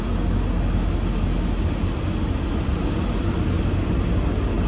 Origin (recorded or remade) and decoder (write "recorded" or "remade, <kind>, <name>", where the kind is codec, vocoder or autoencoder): recorded